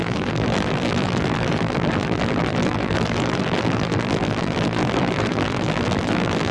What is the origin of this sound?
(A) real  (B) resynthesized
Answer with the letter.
B